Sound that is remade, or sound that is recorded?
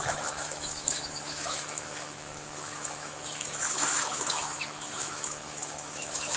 remade